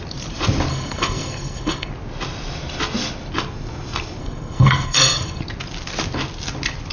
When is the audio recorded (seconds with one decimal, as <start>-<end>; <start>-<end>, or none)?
0.0-0.7; 1.9-4.2; 5.4-6.9